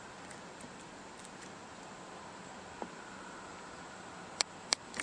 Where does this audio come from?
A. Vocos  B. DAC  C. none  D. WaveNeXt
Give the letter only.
C